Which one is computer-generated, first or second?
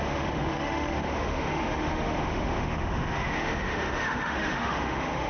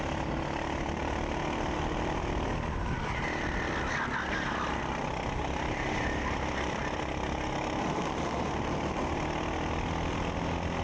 first